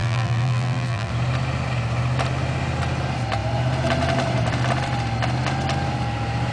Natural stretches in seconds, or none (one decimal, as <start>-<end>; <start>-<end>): 1.1-6.5